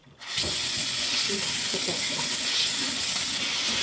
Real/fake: fake